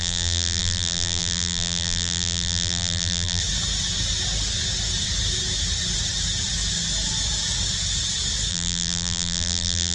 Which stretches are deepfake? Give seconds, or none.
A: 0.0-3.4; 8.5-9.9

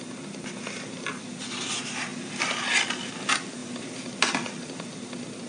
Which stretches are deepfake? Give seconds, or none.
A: 3.6-4.7

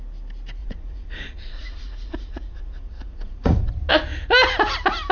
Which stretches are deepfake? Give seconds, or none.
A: 0.6-3.7

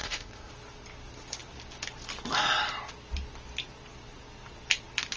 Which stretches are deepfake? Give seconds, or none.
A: 0.0-0.5